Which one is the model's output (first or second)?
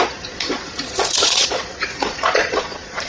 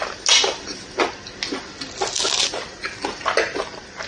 first